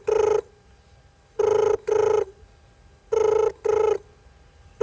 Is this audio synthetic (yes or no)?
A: no